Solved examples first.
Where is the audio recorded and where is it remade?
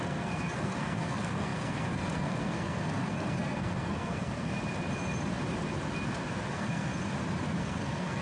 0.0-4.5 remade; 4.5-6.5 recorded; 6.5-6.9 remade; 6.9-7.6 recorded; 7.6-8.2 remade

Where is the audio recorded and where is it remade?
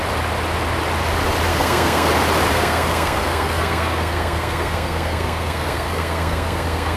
0.0-1.5 recorded; 1.5-2.1 remade; 2.1-2.5 recorded; 2.5-7.0 remade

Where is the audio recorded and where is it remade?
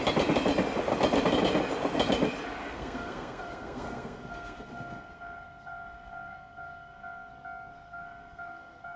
0.0-2.6 recorded; 2.6-7.3 remade; 7.3-7.7 recorded; 7.7-9.0 remade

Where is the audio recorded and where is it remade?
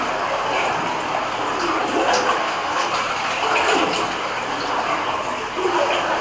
0.0-2.4 recorded; 2.4-2.9 remade; 2.9-6.2 recorded